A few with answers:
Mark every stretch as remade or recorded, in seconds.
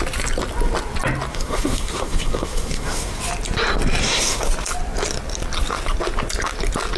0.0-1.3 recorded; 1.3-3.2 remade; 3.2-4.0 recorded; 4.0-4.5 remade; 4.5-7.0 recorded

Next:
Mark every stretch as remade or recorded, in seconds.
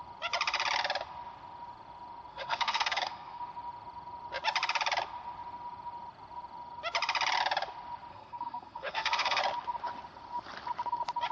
0.0-2.3 recorded; 2.3-3.4 remade; 3.4-8.1 recorded; 8.1-9.4 remade; 9.4-11.3 recorded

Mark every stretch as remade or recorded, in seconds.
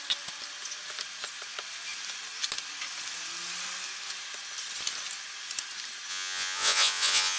0.0-6.1 recorded; 6.1-7.4 remade